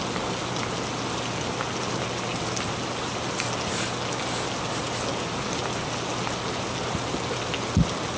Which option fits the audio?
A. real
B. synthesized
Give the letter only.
A